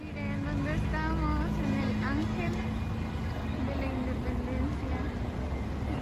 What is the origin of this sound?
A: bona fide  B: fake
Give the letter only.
A